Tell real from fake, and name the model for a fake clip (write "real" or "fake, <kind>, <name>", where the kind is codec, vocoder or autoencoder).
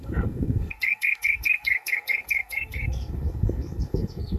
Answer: fake, codec, SNAC